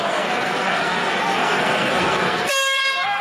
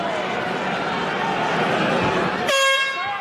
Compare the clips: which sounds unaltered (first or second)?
second